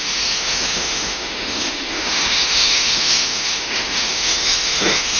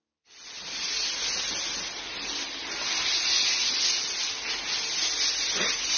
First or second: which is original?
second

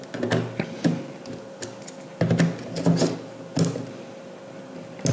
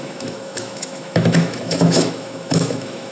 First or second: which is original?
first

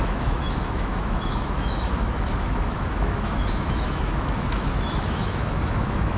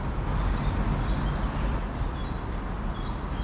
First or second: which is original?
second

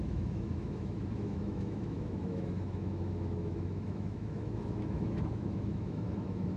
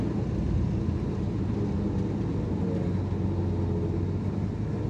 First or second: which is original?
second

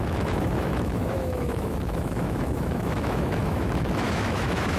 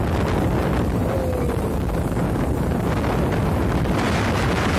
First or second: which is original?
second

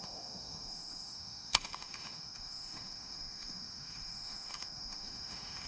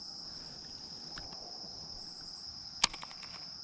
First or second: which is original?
second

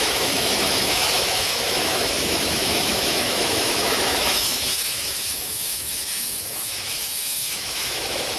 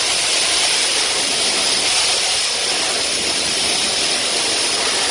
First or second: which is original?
second